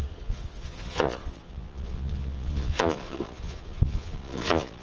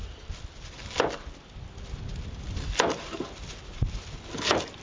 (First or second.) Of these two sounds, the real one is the second